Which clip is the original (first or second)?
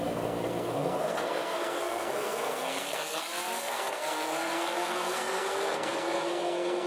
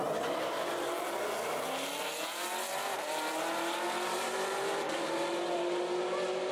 second